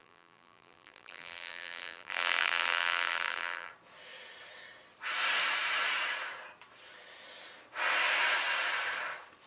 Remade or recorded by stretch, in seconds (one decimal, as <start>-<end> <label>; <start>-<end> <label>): 0.0-3.7 remade; 3.7-9.5 recorded